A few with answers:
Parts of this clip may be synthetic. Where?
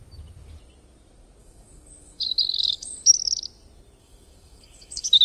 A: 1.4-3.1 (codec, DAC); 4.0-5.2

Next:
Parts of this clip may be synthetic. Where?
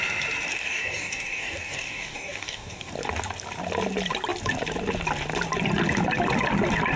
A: 0.5-2.9 (codec, DAC)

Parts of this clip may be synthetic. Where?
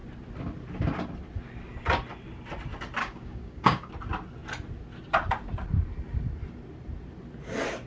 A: 3.0-3.9 (codec, DAC)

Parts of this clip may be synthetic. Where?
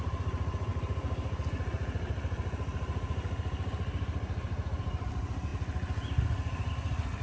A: none